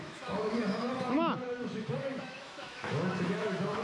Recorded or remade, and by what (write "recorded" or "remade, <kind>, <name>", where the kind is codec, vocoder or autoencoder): remade, autoencoder, DAC-VAE